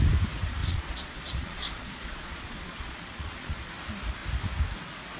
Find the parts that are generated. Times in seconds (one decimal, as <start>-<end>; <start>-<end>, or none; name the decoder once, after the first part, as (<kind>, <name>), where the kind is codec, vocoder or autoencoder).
0.6-3.7 (vocoder, Vocos)